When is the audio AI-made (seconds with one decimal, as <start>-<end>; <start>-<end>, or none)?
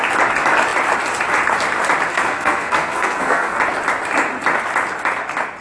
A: 2.1-3.6